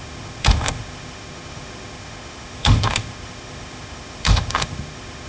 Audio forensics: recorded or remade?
remade